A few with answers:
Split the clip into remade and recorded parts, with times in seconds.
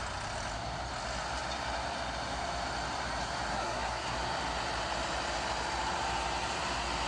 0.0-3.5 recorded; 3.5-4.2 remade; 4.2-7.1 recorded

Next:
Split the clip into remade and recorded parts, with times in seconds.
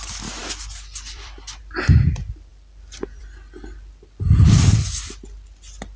0.0-0.4 recorded; 0.4-1.6 remade; 1.6-6.0 recorded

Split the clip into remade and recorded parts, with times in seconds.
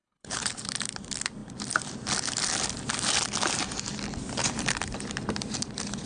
0.0-0.6 remade; 0.6-6.0 recorded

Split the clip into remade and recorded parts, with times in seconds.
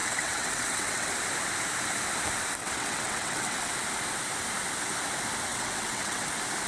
0.0-1.1 remade; 1.1-2.6 recorded; 2.6-3.7 remade; 3.7-5.5 recorded; 5.5-6.3 remade; 6.3-6.7 recorded